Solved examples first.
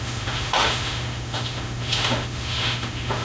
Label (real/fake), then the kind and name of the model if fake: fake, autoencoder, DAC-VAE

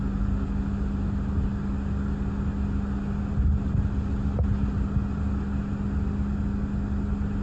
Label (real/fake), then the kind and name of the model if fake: real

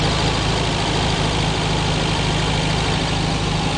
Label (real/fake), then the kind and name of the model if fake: real